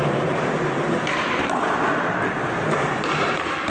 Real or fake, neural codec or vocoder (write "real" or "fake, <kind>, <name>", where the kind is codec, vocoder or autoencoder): real